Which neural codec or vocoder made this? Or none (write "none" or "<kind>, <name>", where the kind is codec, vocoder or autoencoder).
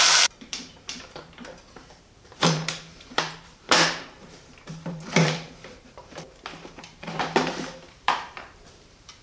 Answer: vocoder, BigVGAN v2